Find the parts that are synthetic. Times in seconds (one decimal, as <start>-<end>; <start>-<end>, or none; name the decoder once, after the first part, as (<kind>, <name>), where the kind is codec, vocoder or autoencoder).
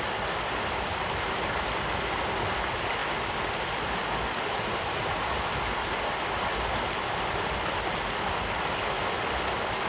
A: none